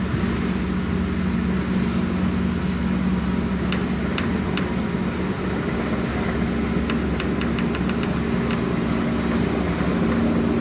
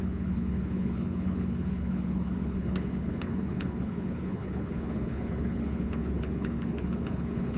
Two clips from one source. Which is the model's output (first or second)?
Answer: second